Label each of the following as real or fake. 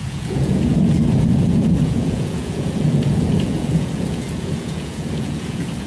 fake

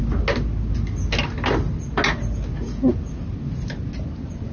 real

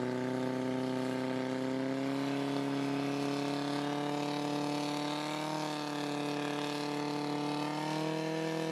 real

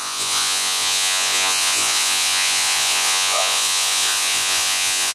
fake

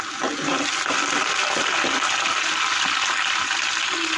real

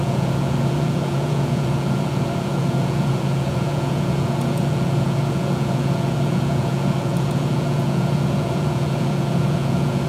fake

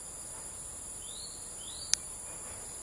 real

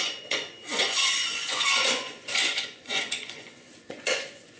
fake